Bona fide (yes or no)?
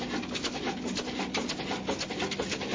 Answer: yes